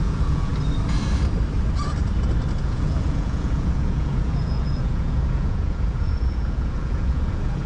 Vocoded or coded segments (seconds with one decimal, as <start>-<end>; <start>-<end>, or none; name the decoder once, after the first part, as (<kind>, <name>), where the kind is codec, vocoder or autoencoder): 0.0-0.5 (vocoder, Vocos); 2.6-7.7